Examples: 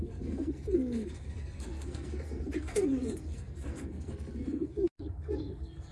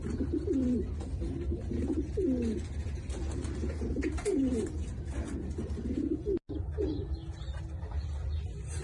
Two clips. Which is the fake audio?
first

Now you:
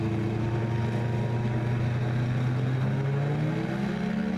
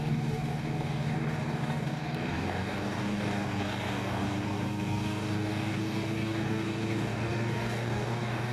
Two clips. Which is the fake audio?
second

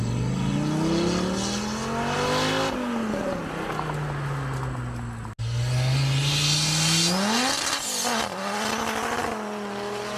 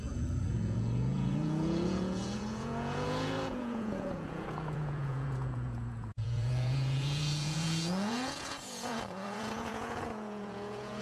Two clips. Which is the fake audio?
second